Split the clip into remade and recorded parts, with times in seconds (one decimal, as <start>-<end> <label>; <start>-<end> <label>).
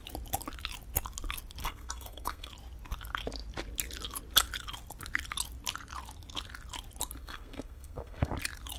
0.0-1.6 recorded; 1.6-2.5 remade; 2.5-7.2 recorded; 7.2-8.3 remade; 8.3-8.8 recorded